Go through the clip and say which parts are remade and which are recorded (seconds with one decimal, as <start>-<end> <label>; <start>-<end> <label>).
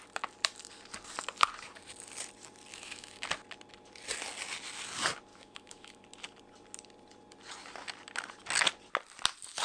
0.0-2.7 recorded; 2.7-3.3 remade; 3.3-5.3 recorded; 5.3-6.0 remade; 6.0-9.6 recorded